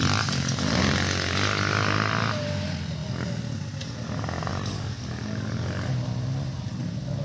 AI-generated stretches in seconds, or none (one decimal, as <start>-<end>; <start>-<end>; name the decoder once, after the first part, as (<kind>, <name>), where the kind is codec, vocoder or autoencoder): 4.5-5.9 (codec, DAC)